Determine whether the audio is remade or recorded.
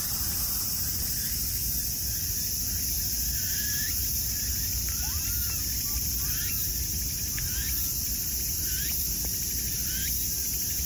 remade